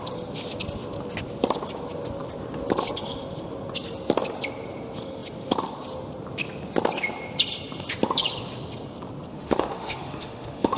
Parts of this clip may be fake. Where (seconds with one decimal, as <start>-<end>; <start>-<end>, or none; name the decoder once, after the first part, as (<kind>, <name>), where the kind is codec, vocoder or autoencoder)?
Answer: 9.3-10.8 (autoencoder, DAC-VAE)